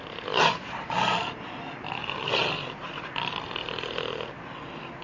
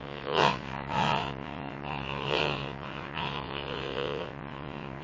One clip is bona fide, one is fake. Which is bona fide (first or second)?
first